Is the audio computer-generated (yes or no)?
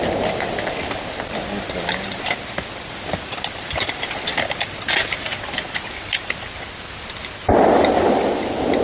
no